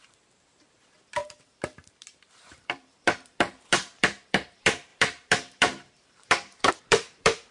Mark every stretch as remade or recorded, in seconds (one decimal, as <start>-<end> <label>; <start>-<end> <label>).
0.0-7.5 remade